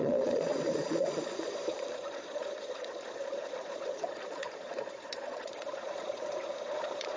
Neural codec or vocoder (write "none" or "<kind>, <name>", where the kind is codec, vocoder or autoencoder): vocoder, Vocos